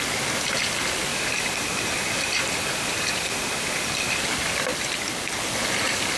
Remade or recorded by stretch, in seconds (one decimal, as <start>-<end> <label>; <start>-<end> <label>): 0.0-1.1 recorded; 1.1-4.2 remade; 4.2-6.2 recorded